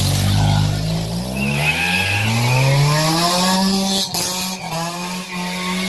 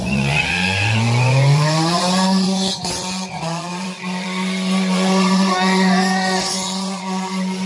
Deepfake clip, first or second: second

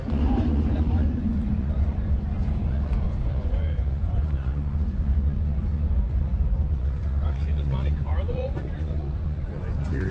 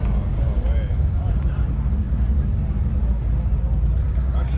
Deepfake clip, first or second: first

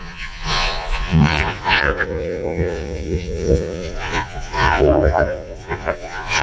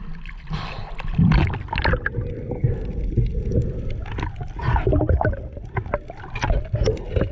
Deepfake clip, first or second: first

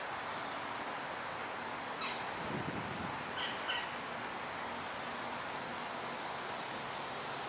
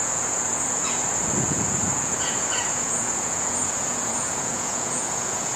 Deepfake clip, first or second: second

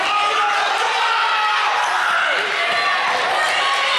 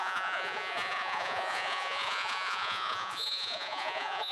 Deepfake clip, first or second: second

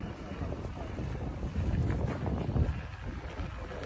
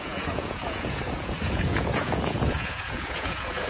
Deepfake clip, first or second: second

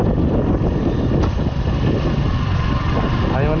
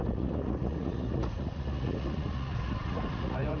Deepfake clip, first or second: second